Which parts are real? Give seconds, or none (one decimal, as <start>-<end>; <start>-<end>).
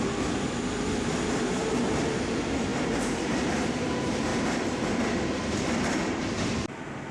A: 0.0-1.6; 2.1-7.1